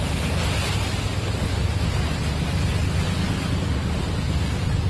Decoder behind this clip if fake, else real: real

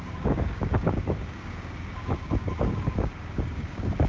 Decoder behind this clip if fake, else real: fake, codec, DAC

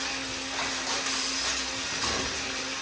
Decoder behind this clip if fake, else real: real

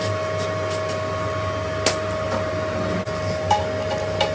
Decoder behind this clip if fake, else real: real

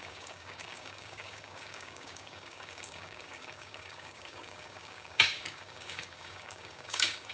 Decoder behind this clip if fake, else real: fake, codec, DAC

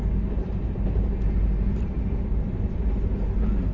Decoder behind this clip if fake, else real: real